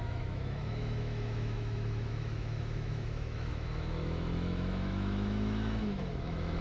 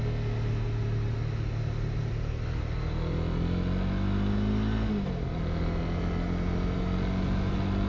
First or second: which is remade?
first